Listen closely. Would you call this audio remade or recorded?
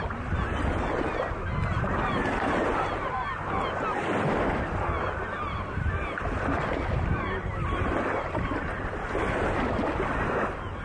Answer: recorded